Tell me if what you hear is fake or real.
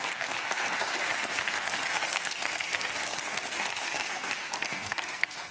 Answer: fake